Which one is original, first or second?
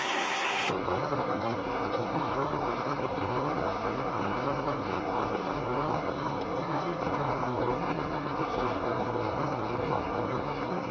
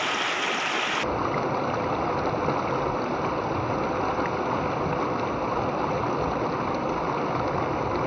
second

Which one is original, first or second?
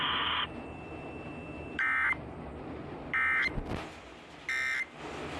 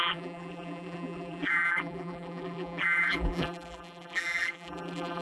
first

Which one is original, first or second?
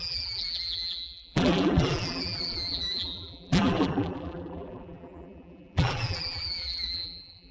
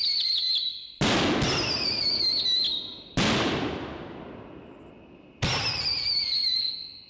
second